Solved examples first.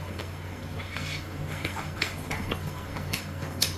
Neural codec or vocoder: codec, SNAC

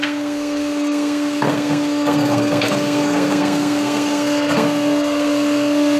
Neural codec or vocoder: codec, SNAC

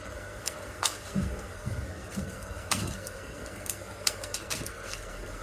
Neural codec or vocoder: codec, SNAC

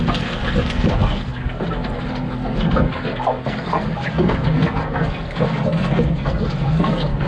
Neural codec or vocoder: codec, SNAC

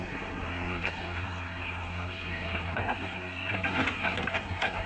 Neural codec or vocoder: codec, SNAC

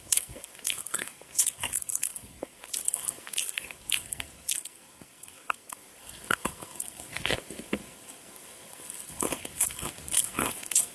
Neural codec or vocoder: codec, SNAC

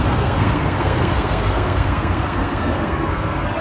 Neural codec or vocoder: codec, SNAC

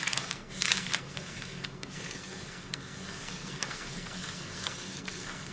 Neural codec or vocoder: codec, SNAC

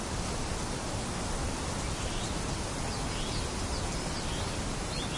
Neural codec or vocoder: none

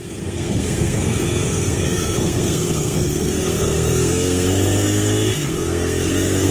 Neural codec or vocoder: codec, SNAC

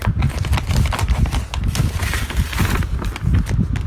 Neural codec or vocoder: none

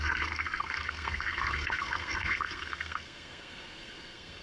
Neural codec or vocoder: codec, SNAC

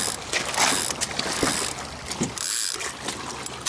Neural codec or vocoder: none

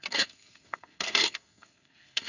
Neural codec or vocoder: codec, SNAC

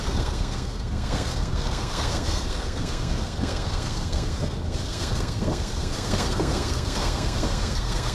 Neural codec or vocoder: codec, SNAC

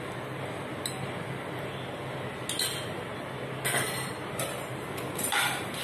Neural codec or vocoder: none